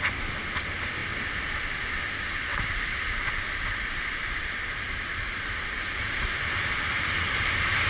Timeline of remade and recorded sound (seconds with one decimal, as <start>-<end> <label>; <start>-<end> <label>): 0.0-2.5 recorded; 2.5-3.3 remade; 3.3-4.2 recorded; 4.2-6.5 remade; 6.5-6.9 recorded; 6.9-7.9 remade